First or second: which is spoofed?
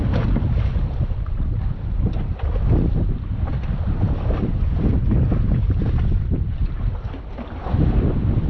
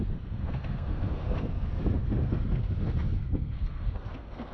second